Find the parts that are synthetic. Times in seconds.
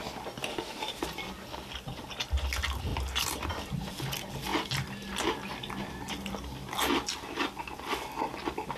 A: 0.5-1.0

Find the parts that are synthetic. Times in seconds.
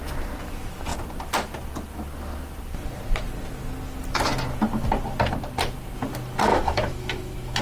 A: 6.5-7.6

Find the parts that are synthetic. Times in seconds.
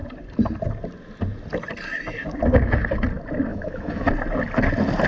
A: 3.5-4.1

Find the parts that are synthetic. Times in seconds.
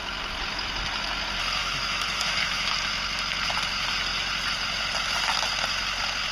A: 1.6-2.7